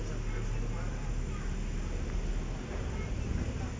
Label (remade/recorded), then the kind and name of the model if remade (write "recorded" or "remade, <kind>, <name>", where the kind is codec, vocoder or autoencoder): recorded